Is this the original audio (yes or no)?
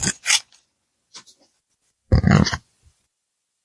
no